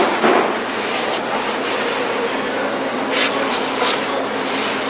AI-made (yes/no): no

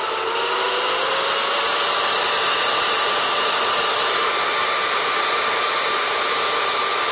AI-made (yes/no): no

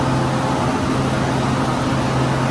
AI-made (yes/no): no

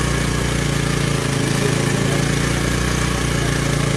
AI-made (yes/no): no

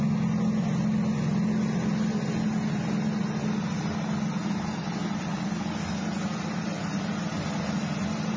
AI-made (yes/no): no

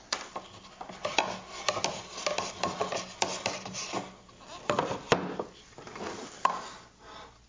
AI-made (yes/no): no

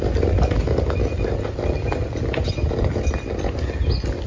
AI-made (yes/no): no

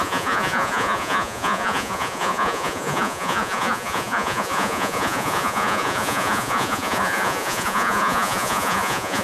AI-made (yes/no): yes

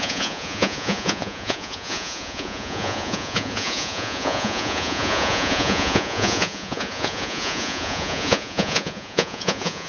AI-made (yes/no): yes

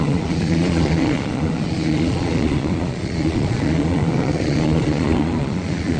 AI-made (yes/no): yes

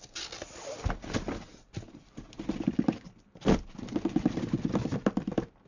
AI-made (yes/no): no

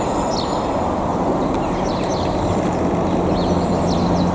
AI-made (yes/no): no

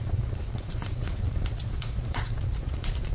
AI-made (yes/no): yes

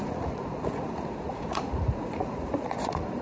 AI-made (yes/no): yes